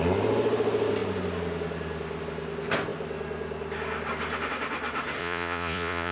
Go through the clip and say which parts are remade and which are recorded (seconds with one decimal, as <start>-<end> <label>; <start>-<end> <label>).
0.0-5.2 recorded; 5.2-6.1 remade

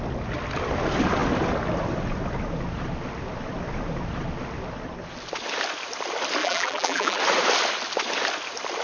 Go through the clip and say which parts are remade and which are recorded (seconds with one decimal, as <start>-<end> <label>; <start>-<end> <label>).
0.0-6.4 recorded; 6.4-7.2 remade; 7.2-8.8 recorded

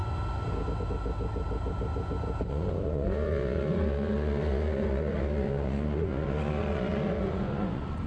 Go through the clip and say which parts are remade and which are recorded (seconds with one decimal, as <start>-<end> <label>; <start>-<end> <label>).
0.0-2.5 recorded; 2.5-8.1 remade